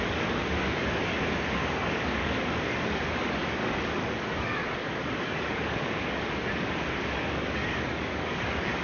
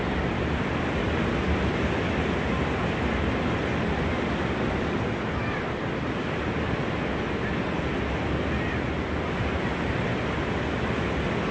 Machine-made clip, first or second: first